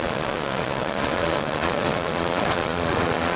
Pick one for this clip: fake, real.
fake